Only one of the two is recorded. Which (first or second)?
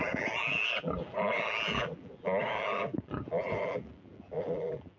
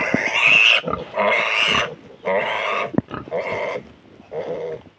second